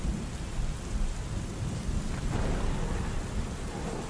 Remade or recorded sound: recorded